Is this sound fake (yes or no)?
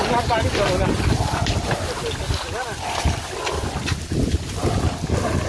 no